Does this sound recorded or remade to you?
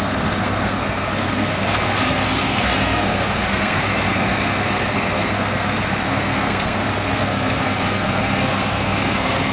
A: remade